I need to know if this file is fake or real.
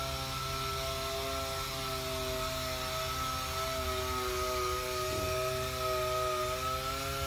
real